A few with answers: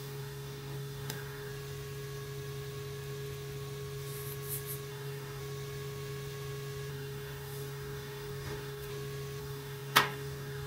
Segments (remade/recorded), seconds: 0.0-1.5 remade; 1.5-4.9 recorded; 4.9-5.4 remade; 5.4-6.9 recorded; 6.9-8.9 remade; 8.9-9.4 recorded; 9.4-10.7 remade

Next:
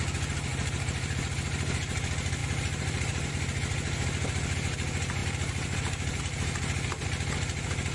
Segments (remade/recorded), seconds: 0.0-0.5 recorded; 0.5-1.3 remade; 1.3-2.4 recorded; 2.4-3.3 remade; 3.3-7.9 recorded